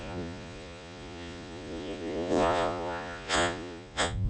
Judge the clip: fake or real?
fake